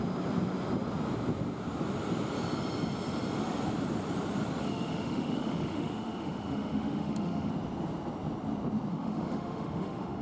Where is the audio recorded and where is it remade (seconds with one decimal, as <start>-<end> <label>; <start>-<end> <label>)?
0.0-4.6 recorded; 4.6-7.5 remade; 7.5-8.9 recorded; 8.9-10.2 remade